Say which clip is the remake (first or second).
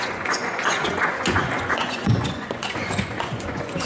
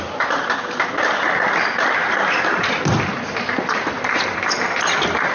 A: first